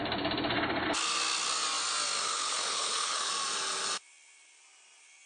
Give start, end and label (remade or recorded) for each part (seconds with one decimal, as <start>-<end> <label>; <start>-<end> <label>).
0.0-2.2 recorded; 2.2-3.3 remade; 3.3-5.3 recorded